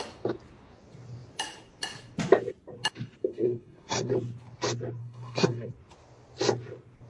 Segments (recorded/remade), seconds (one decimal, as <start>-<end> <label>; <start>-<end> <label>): 0.0-3.3 recorded; 3.3-4.1 remade; 4.1-5.0 recorded; 5.0-5.7 remade; 5.7-7.1 recorded